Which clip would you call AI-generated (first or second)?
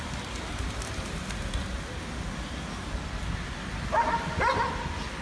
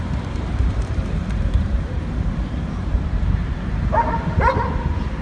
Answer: second